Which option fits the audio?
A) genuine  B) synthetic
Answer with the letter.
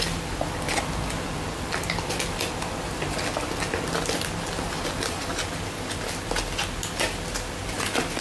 A